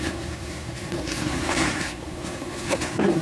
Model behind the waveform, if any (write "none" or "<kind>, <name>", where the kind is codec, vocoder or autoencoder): codec, SNAC